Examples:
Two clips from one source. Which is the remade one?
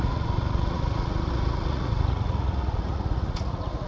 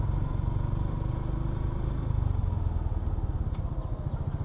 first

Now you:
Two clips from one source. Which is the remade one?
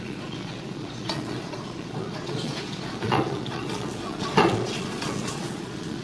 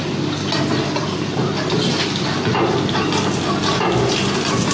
first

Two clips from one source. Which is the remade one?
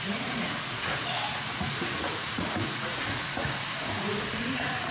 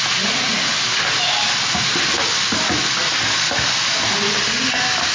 first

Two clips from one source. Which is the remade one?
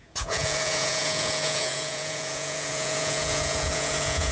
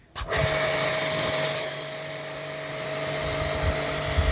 first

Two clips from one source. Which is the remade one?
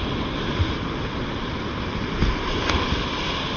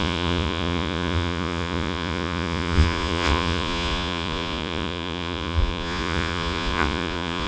second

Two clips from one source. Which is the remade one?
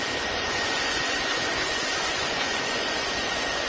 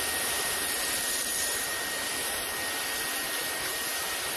first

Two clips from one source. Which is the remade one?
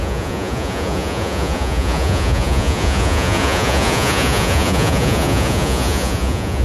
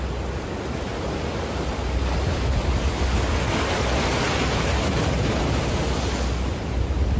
first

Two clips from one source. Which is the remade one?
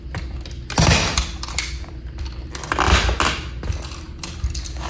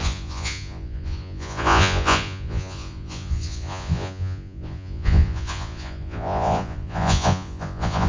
second